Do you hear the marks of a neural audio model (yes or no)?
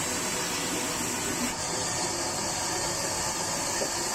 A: no